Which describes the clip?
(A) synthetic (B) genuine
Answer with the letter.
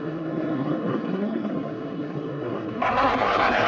A